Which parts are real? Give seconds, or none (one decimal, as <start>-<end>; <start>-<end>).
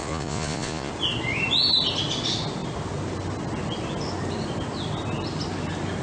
0.9-6.0